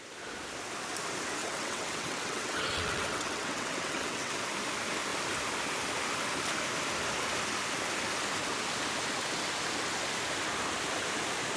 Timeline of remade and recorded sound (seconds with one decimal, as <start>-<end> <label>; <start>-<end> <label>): 0.0-1.4 recorded; 1.4-4.3 remade; 4.3-11.6 recorded

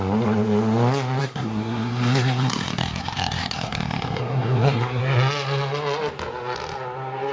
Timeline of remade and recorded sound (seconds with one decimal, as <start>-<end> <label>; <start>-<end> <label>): 0.0-1.2 recorded; 1.2-5.0 remade; 5.0-7.3 recorded

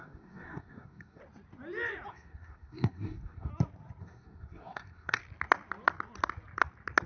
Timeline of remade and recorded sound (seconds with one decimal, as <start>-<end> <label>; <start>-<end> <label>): 0.0-1.2 remade; 1.2-2.1 recorded; 2.1-3.5 remade; 3.5-4.0 recorded; 4.0-5.2 remade; 5.2-7.1 recorded

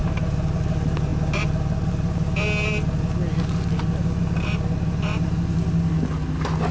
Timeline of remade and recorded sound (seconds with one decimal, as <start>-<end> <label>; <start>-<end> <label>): 0.0-6.7 recorded

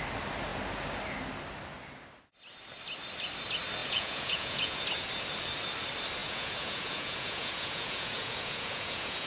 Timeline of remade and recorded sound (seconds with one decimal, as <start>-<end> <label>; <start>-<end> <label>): 0.0-3.8 recorded; 3.8-4.8 remade; 4.8-6.2 recorded; 6.2-9.3 remade

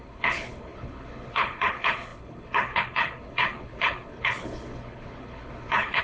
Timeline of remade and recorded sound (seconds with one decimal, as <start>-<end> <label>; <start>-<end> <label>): 0.0-6.0 remade

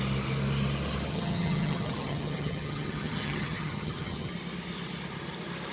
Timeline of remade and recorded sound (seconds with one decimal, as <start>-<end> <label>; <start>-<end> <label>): 0.0-1.1 recorded; 1.1-4.3 remade; 4.3-5.7 recorded